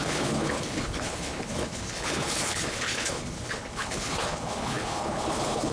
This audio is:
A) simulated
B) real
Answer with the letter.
A